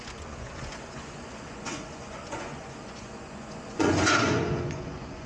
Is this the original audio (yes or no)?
no